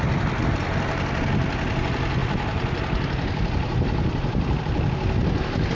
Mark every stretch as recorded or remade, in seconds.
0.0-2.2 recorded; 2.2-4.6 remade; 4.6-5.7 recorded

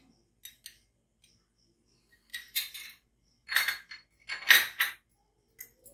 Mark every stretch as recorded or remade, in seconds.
0.0-2.3 recorded; 2.3-3.6 remade; 3.6-5.9 recorded

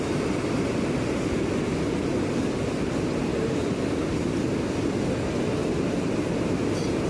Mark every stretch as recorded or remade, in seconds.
0.0-3.3 recorded; 3.3-4.3 remade; 4.3-5.6 recorded; 5.6-7.1 remade

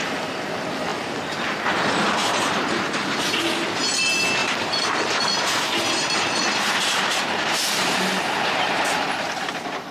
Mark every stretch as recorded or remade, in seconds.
0.0-2.2 recorded; 2.2-3.8 remade; 3.8-4.4 recorded; 4.4-9.0 remade; 9.0-9.9 recorded

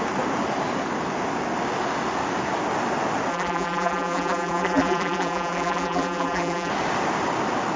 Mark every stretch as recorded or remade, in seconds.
0.0-3.3 recorded; 3.3-6.7 remade; 6.7-7.8 recorded

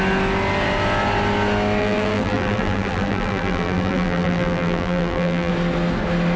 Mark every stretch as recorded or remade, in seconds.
0.0-1.8 recorded; 1.8-5.5 remade; 5.5-6.4 recorded